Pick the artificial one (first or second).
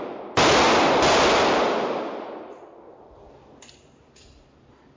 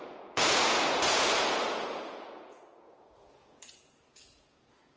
second